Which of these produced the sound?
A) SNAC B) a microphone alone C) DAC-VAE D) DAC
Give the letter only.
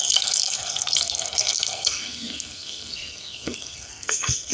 A